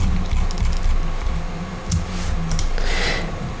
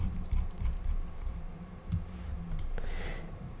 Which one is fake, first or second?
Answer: second